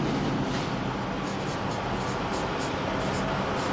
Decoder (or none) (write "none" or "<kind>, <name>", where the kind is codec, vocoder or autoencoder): none